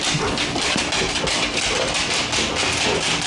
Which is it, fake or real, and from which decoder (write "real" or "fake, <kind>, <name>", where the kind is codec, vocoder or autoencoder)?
real